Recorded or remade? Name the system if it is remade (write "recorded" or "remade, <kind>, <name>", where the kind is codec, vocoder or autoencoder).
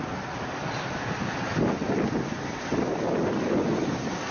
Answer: recorded